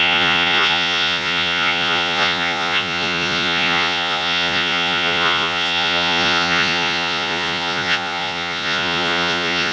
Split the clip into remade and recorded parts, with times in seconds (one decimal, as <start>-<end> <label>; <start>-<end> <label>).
0.0-9.7 remade